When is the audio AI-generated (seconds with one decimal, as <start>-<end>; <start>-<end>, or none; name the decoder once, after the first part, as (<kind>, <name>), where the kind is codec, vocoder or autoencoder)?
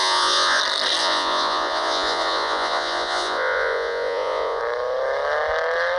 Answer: 0.0-0.6 (vocoder, Vocos); 1.0-4.6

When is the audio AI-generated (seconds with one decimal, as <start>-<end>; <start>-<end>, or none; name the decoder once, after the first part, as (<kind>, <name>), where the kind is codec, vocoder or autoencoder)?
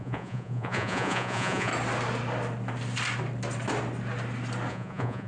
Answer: 0.0-1.7 (vocoder, Vocos); 4.7-5.3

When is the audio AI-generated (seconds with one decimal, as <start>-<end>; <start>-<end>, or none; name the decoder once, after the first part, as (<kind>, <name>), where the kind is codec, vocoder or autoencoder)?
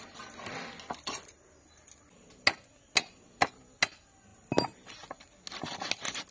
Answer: none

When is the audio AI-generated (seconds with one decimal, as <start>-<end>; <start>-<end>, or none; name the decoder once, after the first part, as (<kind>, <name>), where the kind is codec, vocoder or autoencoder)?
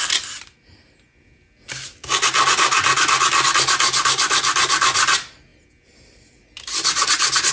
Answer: none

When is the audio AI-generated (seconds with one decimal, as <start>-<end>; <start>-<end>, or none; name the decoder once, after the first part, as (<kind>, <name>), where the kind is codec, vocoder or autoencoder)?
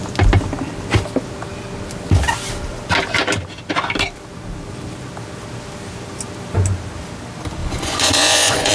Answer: 7.6-8.7 (vocoder, Vocos)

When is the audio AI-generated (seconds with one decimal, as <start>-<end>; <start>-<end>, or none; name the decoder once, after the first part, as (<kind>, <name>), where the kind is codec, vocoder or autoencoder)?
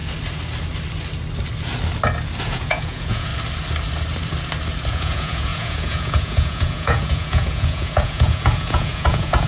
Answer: 2.4-3.3 (vocoder, Vocos); 4.9-9.5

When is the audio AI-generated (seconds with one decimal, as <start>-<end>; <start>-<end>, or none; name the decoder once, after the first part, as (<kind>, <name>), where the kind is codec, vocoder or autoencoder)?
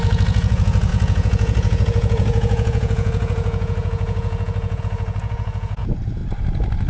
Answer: 0.0-6.2 (vocoder, Vocos)